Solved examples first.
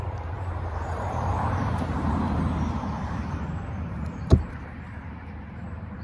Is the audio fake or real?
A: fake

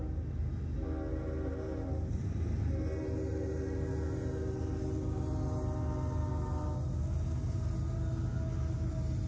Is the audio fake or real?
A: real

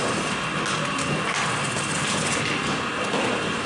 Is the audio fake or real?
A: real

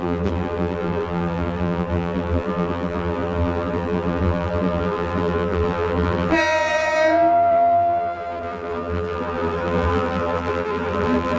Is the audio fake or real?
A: fake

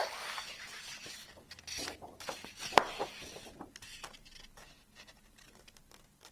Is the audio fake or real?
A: real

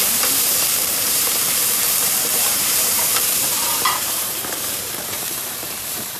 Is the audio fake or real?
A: fake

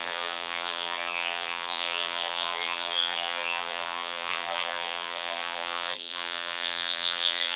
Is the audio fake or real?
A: fake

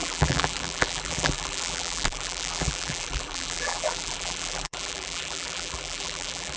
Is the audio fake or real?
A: fake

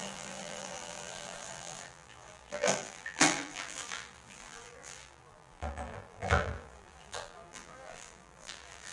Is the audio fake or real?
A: fake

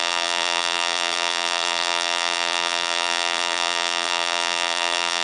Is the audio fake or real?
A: fake